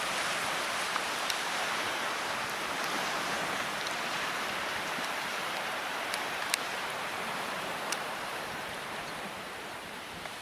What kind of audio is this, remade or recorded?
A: remade